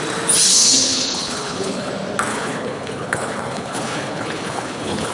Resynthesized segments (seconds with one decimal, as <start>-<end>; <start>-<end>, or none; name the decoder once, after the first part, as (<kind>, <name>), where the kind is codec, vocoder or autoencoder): 0.5-1.9 (codec, HILCodec); 2.3-5.1